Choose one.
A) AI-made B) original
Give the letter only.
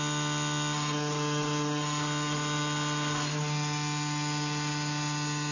B